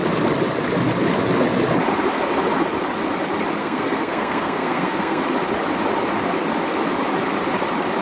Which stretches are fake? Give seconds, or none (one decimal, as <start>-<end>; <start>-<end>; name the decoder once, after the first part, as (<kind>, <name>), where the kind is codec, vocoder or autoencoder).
3.6-5.2 (codec, SNAC)